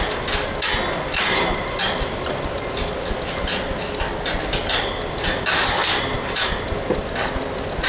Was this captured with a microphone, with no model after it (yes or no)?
yes